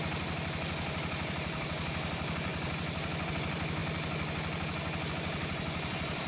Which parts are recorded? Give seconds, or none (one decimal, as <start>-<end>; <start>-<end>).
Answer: none